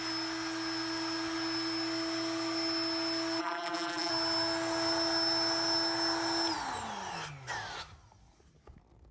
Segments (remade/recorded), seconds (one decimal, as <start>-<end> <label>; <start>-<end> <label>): 0.0-3.4 recorded; 3.4-4.1 remade; 4.1-9.1 recorded